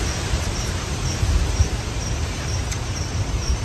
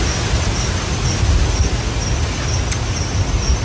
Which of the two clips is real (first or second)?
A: second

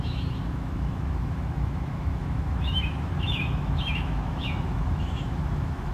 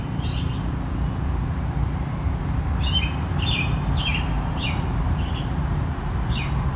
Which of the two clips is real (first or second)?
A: second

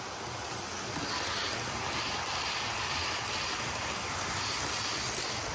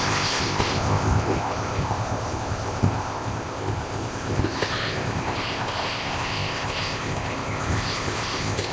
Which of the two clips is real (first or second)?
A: first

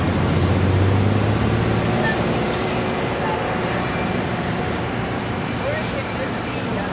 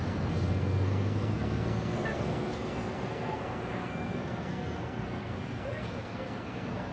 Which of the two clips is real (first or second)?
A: first